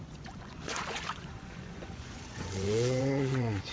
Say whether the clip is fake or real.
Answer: fake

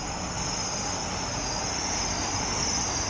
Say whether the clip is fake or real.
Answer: real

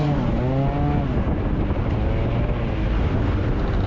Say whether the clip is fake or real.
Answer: real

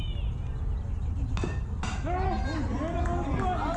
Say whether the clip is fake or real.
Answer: real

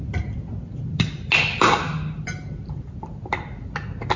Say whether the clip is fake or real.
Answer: real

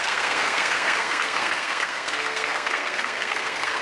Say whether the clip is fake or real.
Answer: fake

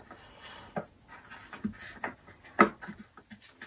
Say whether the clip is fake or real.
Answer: real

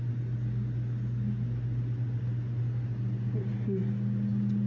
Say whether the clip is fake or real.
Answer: real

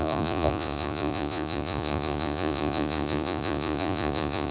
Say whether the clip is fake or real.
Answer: fake